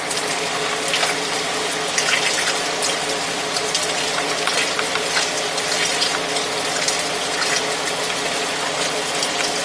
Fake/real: real